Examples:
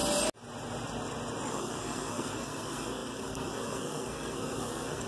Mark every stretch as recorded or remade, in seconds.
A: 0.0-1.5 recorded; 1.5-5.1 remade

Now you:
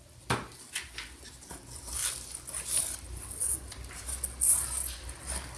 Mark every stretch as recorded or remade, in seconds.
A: 0.0-5.6 recorded

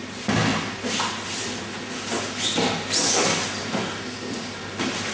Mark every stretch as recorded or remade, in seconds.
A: 0.0-5.1 recorded